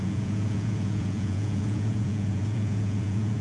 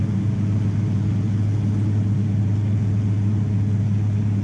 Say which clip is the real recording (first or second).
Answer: second